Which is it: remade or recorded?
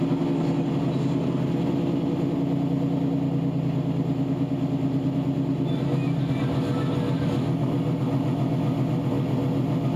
recorded